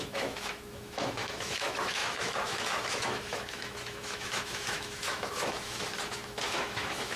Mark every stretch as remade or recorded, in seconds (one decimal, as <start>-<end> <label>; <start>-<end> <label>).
0.0-7.2 remade